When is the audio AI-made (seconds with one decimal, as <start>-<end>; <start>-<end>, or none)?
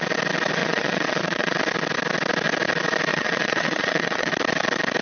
0.6-1.6; 3.1-4.3